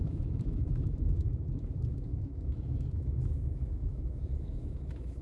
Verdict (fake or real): fake